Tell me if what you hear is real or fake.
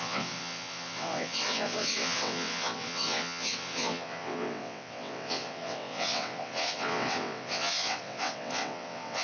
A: fake